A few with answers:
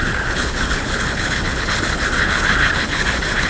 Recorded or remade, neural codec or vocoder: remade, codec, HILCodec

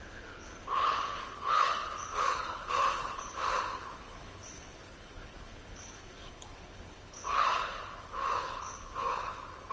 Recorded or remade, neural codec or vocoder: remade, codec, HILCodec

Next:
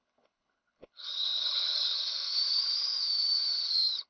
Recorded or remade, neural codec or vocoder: remade, codec, HILCodec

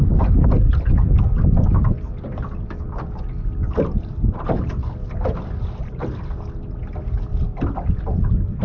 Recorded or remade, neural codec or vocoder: recorded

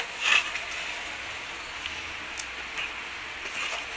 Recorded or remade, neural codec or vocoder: recorded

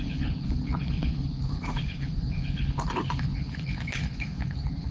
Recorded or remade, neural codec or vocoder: remade, codec, HILCodec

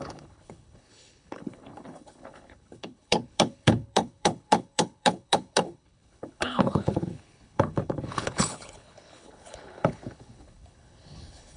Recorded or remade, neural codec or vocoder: remade, codec, HILCodec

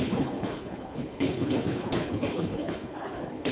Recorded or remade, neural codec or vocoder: remade, codec, HILCodec